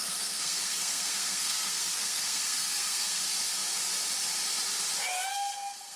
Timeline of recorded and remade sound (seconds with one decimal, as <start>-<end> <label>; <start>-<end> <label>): 0.0-3.2 remade; 3.2-5.3 recorded; 5.3-6.0 remade